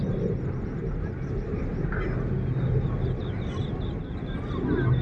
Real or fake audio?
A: real